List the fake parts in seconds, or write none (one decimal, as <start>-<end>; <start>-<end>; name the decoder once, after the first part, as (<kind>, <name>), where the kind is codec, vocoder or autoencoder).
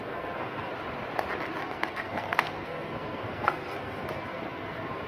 0.0-0.7 (codec, SNAC); 1.6-5.1